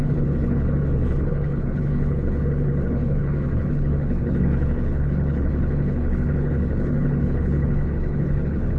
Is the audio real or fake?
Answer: fake